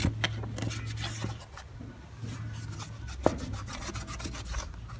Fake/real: real